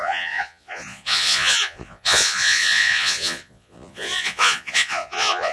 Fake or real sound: fake